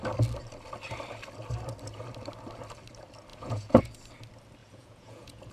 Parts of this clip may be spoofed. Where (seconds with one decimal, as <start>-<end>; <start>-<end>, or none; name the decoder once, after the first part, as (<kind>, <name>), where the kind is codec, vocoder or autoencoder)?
3.3-3.8 (vocoder, Vocos); 4.6-5.5